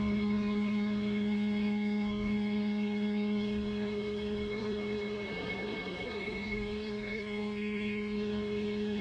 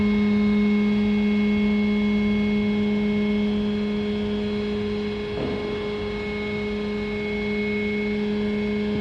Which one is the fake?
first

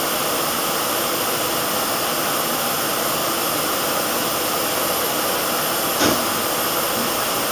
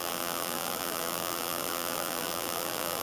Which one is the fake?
second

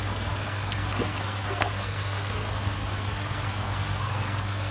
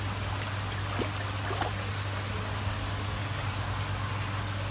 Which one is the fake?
first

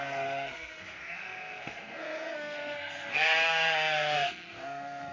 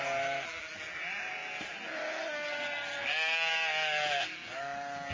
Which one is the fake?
first